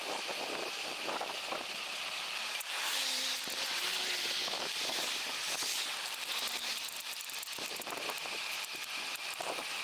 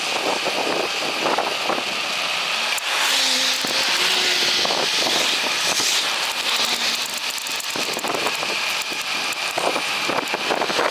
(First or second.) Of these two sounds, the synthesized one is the first